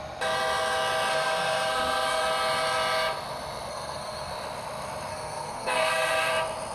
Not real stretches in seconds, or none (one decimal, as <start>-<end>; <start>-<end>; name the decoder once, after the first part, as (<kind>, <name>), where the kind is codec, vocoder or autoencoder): 1.1-2.2 (codec, SNAC); 3.7-4.3; 5.1-6.3